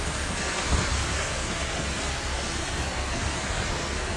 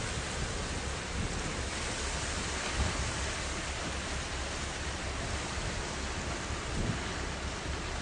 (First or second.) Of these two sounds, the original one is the second